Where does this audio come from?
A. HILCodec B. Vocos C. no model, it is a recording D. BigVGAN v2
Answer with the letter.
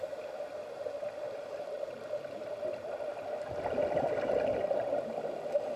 C